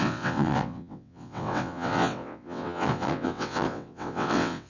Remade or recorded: remade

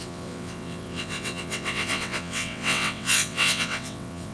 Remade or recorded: remade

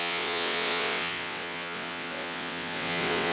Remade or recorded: remade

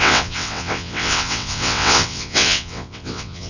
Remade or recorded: remade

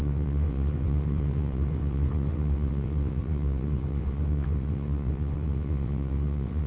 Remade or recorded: remade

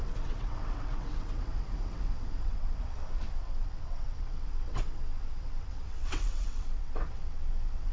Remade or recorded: remade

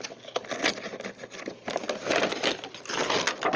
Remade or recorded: recorded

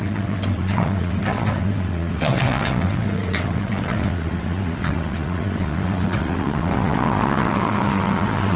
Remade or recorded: remade